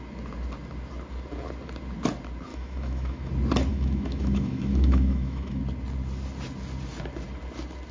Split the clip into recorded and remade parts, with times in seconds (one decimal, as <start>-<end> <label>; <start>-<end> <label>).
0.0-2.5 recorded; 2.5-3.3 remade; 3.3-3.7 recorded; 3.7-5.6 remade; 5.6-7.9 recorded